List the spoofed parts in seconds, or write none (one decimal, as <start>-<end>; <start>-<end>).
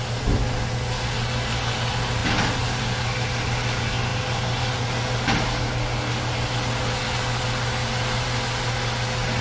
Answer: none